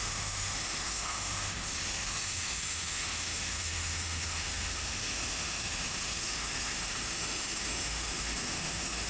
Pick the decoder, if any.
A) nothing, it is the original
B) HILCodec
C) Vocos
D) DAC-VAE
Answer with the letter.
D